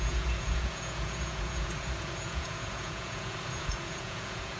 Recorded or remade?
remade